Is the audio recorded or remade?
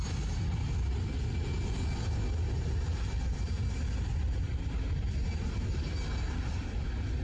recorded